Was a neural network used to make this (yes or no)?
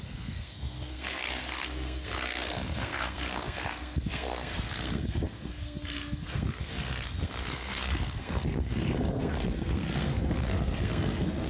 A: yes